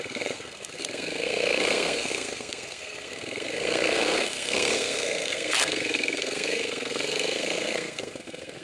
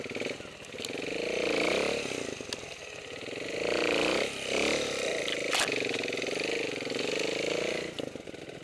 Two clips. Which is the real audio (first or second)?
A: second